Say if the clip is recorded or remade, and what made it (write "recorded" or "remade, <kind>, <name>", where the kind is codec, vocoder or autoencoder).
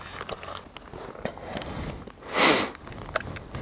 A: recorded